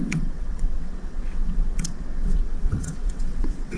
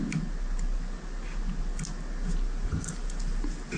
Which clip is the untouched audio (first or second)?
second